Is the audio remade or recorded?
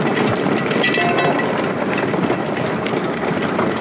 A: recorded